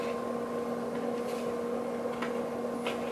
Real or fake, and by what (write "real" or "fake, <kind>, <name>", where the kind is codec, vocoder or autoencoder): real